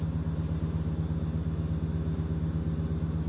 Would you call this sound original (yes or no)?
yes